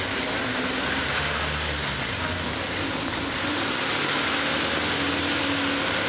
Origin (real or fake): real